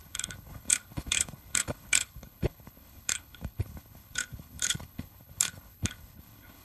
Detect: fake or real fake